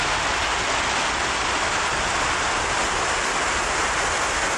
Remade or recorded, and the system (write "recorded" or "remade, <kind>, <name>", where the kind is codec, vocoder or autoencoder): recorded